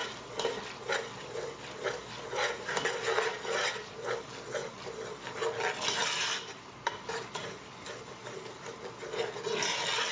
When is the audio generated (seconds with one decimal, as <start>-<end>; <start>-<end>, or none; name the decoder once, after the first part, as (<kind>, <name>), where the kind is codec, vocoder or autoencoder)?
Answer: none